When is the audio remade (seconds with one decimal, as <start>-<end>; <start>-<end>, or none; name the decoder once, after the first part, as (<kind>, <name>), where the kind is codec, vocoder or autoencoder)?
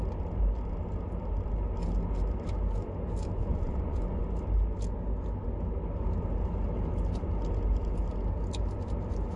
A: 3.4-4.2 (vocoder, Vocos)